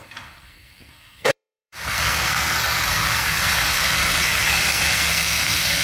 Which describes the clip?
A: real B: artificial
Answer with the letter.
B